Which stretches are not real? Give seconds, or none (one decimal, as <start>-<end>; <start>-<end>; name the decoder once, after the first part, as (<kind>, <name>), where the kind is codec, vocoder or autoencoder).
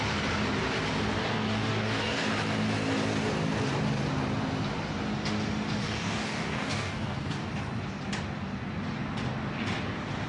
1.2-2.3 (codec, DAC); 5.8-7.5